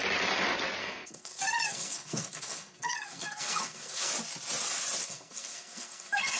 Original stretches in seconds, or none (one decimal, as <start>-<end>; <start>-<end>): 0.0-0.8; 4.1-5.0